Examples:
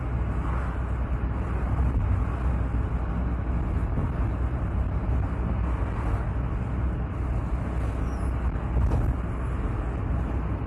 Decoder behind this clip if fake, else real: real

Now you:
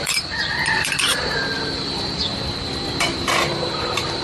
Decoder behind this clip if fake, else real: fake, vocoder, BigVGAN v2